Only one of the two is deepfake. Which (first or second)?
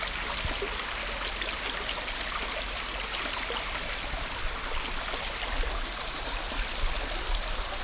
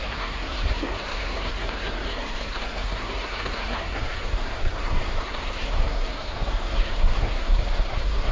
second